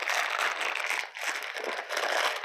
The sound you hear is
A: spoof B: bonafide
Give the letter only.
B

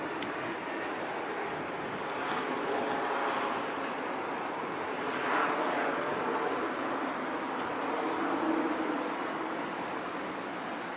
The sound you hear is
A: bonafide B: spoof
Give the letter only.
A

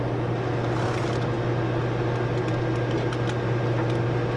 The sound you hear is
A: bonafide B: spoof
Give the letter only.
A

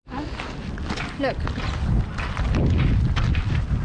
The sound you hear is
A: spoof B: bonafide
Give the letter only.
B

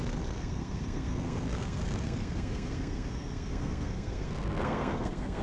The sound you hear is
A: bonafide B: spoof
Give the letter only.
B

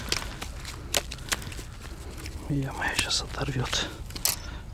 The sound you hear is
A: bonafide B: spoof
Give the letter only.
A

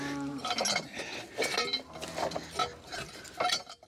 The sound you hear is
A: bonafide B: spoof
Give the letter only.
A